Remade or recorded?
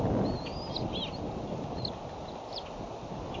recorded